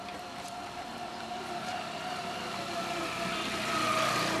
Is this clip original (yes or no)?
yes